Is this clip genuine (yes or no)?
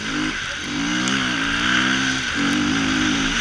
yes